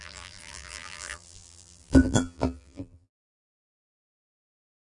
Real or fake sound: fake